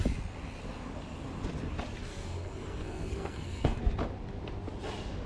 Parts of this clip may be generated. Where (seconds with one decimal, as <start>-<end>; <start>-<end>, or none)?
2.1-3.8